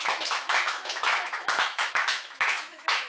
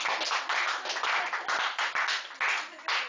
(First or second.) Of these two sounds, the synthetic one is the first